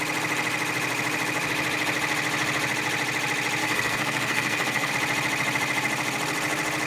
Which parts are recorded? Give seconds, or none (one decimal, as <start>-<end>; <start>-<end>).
0.0-3.6; 4.9-6.9